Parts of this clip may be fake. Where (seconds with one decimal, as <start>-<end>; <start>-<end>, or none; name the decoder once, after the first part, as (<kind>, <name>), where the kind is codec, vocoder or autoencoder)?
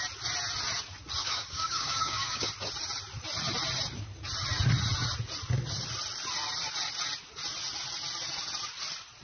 1.2-2.5 (codec, DAC)